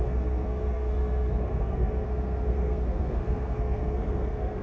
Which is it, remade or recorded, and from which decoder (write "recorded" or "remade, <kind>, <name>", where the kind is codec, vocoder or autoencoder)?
remade, codec, SNAC